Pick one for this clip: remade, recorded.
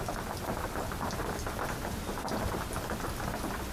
recorded